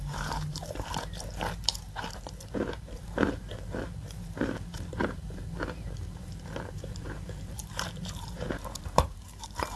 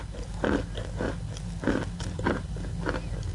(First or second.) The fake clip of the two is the first